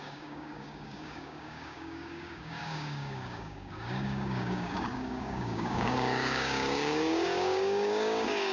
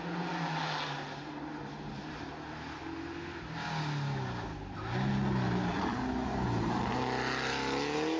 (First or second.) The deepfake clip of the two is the first